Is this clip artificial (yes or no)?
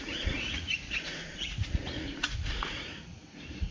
yes